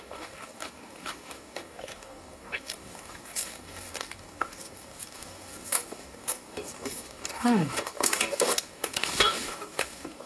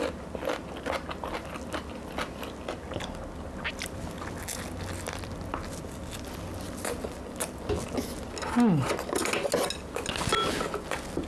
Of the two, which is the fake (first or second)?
first